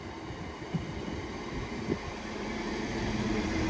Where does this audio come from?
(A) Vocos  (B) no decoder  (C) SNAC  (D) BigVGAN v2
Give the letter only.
D